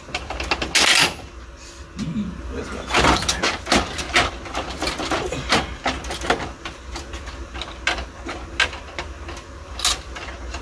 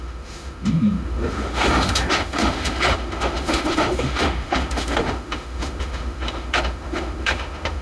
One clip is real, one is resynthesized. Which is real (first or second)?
first